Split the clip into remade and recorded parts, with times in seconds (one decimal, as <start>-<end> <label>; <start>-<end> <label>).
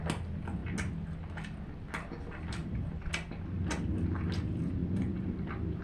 0.0-2.6 recorded; 2.6-3.1 remade; 3.1-4.8 recorded; 4.8-5.8 remade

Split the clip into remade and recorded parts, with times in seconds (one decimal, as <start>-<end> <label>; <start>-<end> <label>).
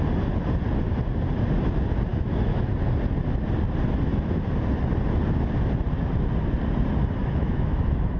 0.0-2.1 recorded; 2.1-2.7 remade; 2.7-7.2 recorded; 7.2-8.2 remade